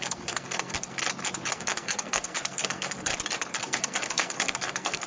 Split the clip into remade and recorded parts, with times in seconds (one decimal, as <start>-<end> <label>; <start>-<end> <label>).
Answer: 0.0-1.0 remade; 1.0-1.5 recorded; 1.5-3.1 remade; 3.1-3.6 recorded; 3.6-5.1 remade